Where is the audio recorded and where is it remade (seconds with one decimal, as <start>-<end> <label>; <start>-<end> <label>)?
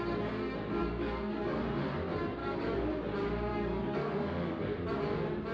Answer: 0.0-0.8 recorded; 0.8-1.6 remade; 1.6-2.4 recorded; 2.4-2.9 remade; 2.9-3.5 recorded; 3.5-4.9 remade; 4.9-5.5 recorded